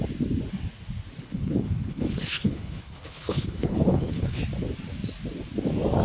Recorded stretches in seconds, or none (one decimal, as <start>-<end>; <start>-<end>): 0.0-1.2; 4.4-6.0